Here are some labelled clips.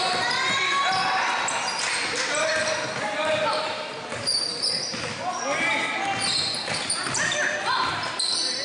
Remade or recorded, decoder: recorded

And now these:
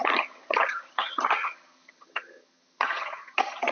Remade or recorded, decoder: remade, vocoder, HiFi-GAN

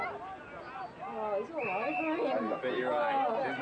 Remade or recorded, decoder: recorded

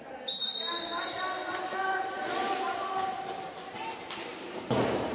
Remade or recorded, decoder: recorded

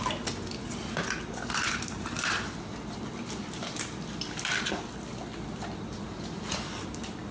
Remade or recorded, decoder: recorded